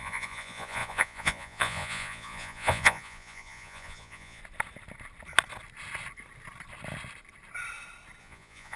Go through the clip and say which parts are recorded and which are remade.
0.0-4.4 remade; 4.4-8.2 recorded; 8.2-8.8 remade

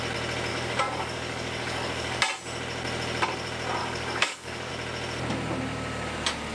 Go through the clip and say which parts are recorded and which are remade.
0.0-0.5 recorded; 0.5-2.2 remade; 2.2-3.8 recorded; 3.8-4.7 remade; 4.7-6.5 recorded